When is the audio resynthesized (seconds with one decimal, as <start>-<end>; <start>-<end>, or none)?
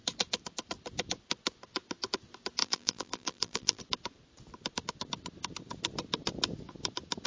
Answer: 2.6-3.8